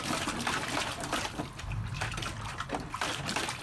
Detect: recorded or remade recorded